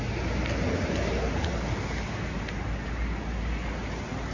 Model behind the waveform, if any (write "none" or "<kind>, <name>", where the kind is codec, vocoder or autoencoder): none